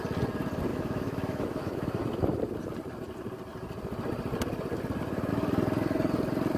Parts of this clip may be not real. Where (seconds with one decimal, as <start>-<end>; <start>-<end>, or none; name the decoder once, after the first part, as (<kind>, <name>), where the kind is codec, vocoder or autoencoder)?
0.7-1.9 (autoencoder, DAC-VAE)

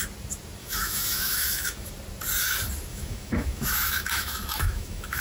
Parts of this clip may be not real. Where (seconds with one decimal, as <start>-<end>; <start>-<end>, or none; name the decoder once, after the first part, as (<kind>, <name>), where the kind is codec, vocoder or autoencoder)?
0.6-1.9 (autoencoder, DAC-VAE); 2.9-5.2

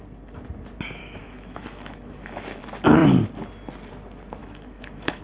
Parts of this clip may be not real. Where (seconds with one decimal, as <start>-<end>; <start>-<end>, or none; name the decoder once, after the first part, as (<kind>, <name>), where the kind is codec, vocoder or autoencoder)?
1.0-2.6 (autoencoder, DAC-VAE); 4.4-5.2

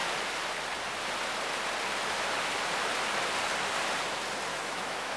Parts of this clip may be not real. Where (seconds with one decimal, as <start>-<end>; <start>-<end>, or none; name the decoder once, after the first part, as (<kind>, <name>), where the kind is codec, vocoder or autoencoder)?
4.5-5.2 (autoencoder, DAC-VAE)

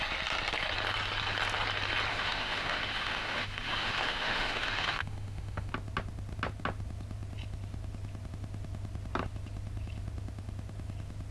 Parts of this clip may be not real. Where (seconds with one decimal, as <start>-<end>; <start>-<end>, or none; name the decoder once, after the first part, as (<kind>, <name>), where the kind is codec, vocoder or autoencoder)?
2.1-5.7 (autoencoder, DAC-VAE)

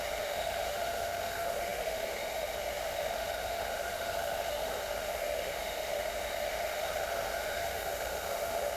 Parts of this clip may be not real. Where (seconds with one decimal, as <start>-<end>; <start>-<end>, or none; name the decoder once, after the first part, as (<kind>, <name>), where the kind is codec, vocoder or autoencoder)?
0.0-8.8 (autoencoder, DAC-VAE)

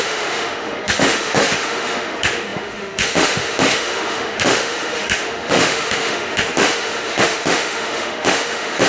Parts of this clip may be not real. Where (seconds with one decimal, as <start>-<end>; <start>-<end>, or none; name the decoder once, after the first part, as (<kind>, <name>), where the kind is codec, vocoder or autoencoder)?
0.0-8.9 (autoencoder, DAC-VAE)